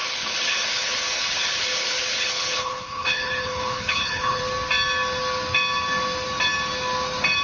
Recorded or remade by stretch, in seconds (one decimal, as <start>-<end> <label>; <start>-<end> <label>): 0.0-4.4 remade; 4.4-7.4 recorded